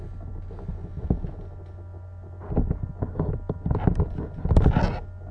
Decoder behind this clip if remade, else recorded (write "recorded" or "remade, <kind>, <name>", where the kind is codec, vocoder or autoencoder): recorded